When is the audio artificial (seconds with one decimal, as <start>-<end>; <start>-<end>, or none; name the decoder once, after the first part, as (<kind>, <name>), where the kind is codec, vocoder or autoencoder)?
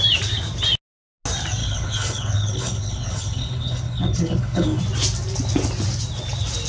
1.6-4.8 (codec, HILCodec)